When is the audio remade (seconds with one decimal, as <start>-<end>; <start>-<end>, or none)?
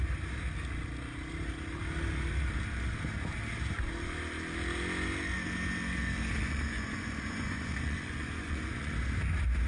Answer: 6.4-8.9